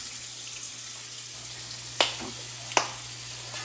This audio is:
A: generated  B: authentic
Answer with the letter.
B